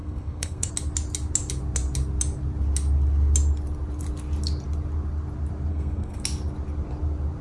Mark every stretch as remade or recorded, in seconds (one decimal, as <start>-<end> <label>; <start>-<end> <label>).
0.0-0.7 remade; 0.7-5.7 recorded; 5.7-6.2 remade; 6.2-7.4 recorded